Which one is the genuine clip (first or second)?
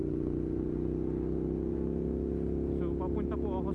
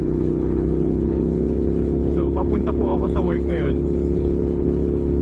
first